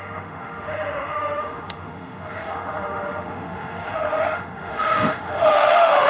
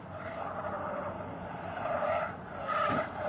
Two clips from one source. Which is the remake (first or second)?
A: first